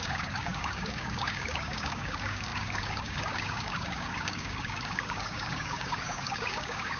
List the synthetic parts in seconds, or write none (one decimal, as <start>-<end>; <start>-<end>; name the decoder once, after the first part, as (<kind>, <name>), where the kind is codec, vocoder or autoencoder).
0.0-7.0 (codec, DAC)